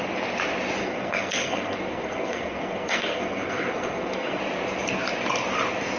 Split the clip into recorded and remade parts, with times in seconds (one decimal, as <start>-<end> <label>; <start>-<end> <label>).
0.0-0.8 recorded; 0.8-4.4 remade; 4.4-6.0 recorded